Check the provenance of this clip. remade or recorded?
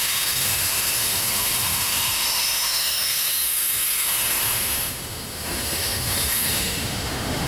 remade